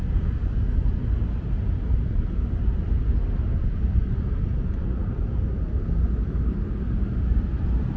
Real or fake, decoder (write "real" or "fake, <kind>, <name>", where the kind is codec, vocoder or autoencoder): real